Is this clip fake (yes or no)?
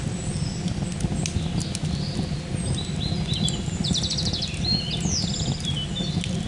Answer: no